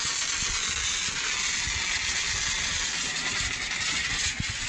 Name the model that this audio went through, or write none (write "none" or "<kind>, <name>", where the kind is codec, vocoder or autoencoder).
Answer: none